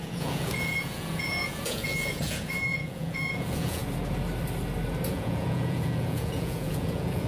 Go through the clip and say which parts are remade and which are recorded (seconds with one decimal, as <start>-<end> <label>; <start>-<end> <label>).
0.0-3.8 remade; 3.8-5.1 recorded; 5.1-7.3 remade